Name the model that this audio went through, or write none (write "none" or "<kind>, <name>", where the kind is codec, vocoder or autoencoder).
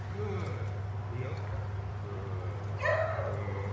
none